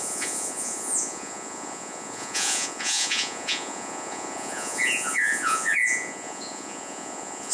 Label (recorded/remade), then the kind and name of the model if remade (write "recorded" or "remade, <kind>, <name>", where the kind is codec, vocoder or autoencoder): remade, vocoder, Vocos